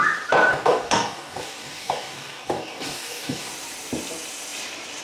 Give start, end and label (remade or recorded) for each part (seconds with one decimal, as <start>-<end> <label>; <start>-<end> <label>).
0.0-0.5 recorded; 0.5-3.5 remade; 3.5-5.0 recorded